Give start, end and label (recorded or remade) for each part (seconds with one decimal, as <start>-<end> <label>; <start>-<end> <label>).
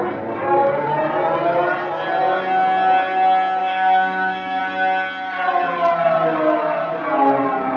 0.0-0.4 recorded; 0.4-0.9 remade; 0.9-3.6 recorded; 3.6-4.6 remade; 4.6-7.8 recorded